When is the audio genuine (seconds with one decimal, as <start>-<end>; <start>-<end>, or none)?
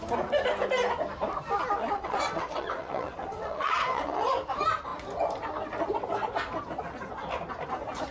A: 0.0-1.8; 4.3-8.1